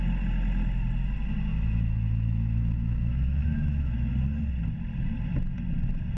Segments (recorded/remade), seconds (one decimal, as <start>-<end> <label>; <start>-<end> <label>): 0.0-1.5 recorded; 1.5-4.1 remade; 4.1-6.2 recorded